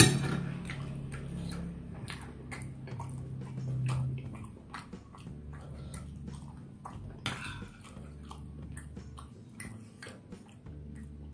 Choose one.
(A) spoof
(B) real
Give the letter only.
B